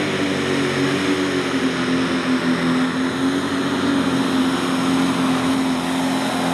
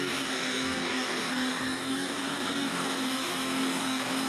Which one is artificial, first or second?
second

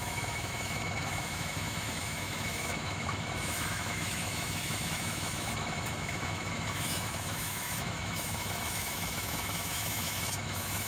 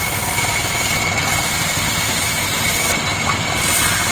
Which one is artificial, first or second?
first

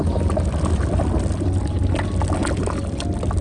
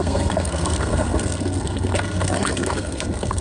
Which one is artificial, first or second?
second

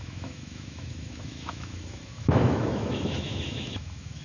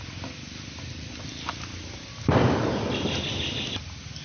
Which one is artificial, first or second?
first